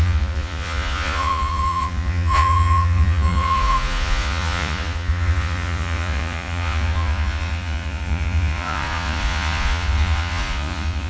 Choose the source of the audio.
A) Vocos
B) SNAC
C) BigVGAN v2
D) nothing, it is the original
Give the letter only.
A